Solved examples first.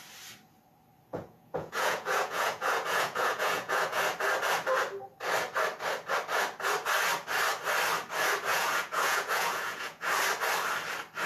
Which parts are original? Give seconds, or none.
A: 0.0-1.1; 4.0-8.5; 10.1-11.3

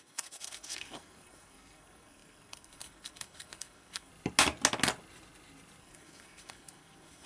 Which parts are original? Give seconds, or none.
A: 4.1-5.8

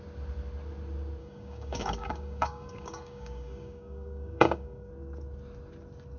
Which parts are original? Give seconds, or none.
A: 0.0-1.2; 4.9-6.2